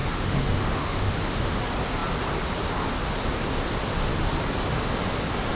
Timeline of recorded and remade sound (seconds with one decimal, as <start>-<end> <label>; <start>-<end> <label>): 0.0-1.6 remade; 1.6-5.5 recorded